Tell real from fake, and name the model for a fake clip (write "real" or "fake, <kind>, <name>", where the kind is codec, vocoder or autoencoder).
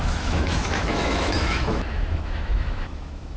fake, autoencoder, DAC-VAE